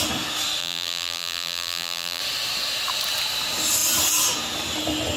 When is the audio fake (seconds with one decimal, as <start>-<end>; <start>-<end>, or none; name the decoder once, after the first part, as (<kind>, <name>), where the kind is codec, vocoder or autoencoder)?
0.6-2.2 (vocoder, BigVGAN v2)